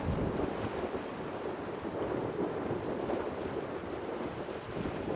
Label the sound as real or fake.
fake